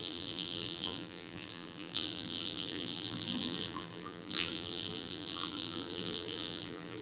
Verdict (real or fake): fake